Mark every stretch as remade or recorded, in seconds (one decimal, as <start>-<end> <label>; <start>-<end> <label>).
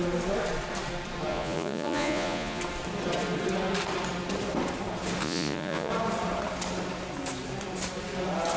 0.0-1.3 recorded; 1.3-2.6 remade; 2.6-5.2 recorded; 5.2-5.9 remade; 5.9-8.6 recorded